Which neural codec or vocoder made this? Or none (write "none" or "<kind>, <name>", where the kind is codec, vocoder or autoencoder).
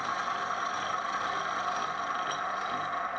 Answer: none